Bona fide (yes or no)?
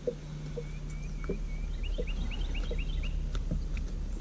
yes